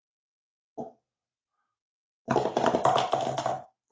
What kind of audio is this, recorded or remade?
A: recorded